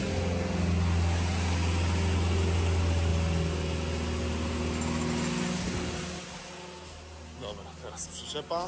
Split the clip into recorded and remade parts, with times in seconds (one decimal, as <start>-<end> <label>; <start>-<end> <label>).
0.0-8.7 recorded